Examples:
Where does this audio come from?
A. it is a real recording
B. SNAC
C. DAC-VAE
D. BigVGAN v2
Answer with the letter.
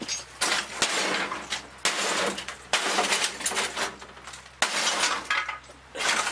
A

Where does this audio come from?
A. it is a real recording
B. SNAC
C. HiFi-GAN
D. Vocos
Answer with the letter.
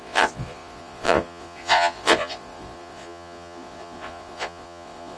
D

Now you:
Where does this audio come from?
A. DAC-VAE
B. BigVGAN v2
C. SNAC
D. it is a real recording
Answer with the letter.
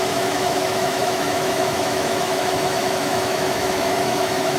A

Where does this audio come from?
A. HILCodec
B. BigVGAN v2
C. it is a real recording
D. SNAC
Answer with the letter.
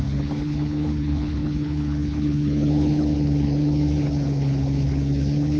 A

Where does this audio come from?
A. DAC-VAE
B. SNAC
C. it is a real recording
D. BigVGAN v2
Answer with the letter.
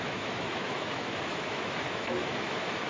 A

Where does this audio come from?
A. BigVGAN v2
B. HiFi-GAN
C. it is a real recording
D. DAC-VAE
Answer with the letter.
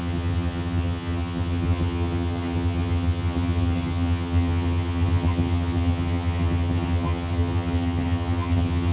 B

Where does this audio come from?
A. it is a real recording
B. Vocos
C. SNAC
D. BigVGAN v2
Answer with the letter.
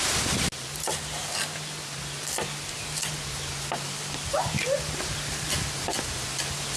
A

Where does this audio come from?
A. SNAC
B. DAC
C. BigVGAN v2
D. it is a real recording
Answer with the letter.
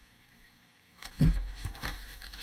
B